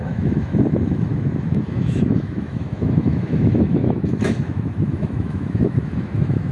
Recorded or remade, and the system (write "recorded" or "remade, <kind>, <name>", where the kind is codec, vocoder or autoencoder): remade, autoencoder, DAC-VAE